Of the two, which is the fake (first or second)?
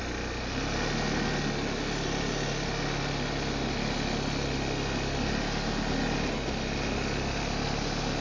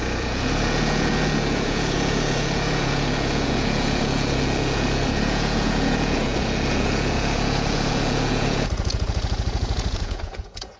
second